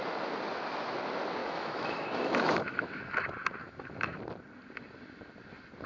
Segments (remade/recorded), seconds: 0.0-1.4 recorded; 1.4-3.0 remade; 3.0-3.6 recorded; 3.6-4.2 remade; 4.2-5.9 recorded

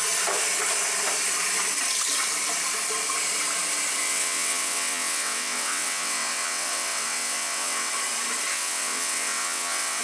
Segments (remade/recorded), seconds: 0.0-4.0 recorded; 4.0-7.9 remade; 7.9-8.5 recorded; 8.5-10.0 remade

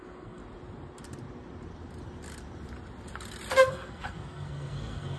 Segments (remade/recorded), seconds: 0.0-0.4 remade; 0.4-3.5 recorded; 3.5-5.2 remade